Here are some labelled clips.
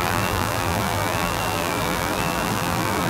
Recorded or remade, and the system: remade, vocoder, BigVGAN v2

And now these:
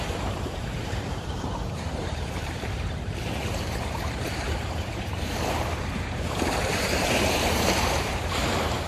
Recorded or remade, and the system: remade, vocoder, BigVGAN v2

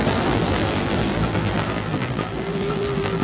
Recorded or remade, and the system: remade, vocoder, BigVGAN v2